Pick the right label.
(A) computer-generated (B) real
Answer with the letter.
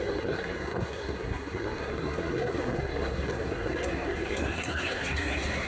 A